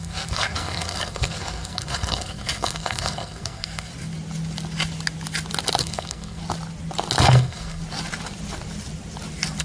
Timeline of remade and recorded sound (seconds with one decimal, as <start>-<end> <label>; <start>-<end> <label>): 0.0-3.9 remade; 3.9-5.8 recorded; 5.8-6.4 remade; 6.4-7.2 recorded; 7.2-7.8 remade; 7.8-9.6 recorded